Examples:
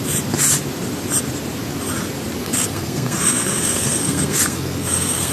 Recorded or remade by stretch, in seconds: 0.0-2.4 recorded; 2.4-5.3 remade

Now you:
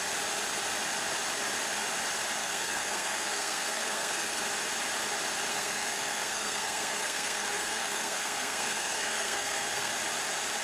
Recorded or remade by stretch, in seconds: 0.0-2.4 recorded; 2.4-4.4 remade; 4.4-5.5 recorded; 5.5-9.9 remade; 9.9-10.6 recorded

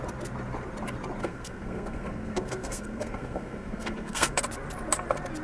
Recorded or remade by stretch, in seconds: 0.0-1.2 recorded; 1.2-4.4 remade; 4.4-5.4 recorded

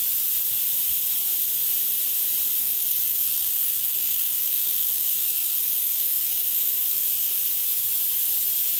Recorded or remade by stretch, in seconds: 0.0-2.6 recorded; 2.6-7.3 remade; 7.3-8.8 recorded

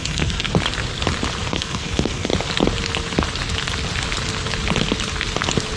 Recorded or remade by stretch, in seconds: 0.0-0.5 remade; 0.5-1.5 recorded; 1.5-2.3 remade; 2.3-5.8 recorded

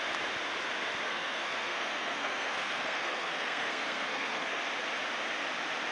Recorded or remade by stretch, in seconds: 0.0-1.1 recorded; 1.1-4.6 remade; 4.6-5.9 recorded

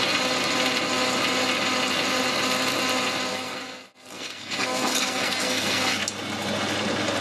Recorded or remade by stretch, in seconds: 0.0-3.3 recorded; 3.3-6.0 remade; 6.0-7.2 recorded